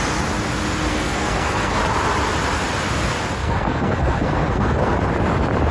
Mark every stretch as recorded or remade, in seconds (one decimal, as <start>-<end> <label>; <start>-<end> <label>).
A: 0.0-0.9 recorded; 0.9-1.8 remade; 1.8-3.4 recorded; 3.4-5.0 remade; 5.0-5.7 recorded